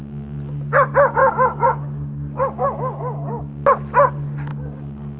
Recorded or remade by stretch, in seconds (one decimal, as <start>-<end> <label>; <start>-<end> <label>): 0.0-1.2 recorded; 1.2-3.4 remade; 3.4-4.5 recorded; 4.5-5.2 remade